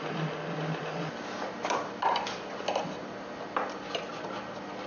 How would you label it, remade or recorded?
recorded